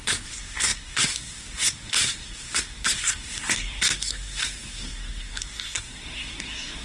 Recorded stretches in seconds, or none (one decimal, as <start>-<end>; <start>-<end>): none